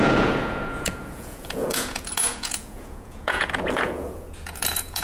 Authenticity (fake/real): fake